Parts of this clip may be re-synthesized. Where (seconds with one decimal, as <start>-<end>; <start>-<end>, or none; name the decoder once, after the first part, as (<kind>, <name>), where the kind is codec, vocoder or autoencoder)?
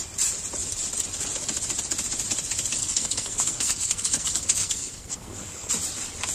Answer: 2.8-5.7 (codec, SNAC)